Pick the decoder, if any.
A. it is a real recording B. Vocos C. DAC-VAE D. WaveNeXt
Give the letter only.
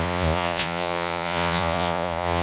B